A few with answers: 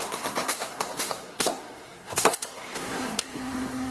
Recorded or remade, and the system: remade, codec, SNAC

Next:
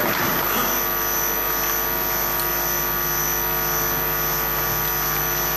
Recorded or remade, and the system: recorded